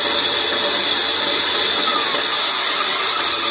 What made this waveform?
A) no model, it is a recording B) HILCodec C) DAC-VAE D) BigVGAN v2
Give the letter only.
A